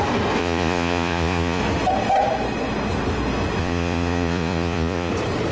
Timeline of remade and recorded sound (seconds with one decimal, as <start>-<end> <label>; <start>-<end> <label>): 0.0-0.4 recorded; 0.4-1.6 remade; 1.6-3.6 recorded; 3.6-5.1 remade; 5.1-5.5 recorded